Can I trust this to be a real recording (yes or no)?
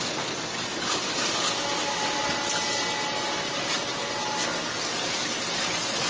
yes